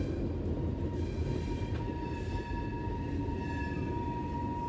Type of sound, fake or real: real